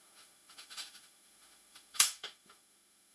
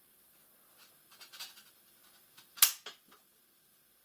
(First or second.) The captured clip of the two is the second